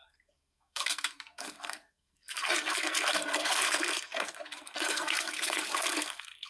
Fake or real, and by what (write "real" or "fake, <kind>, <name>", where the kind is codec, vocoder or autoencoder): fake, codec, SNAC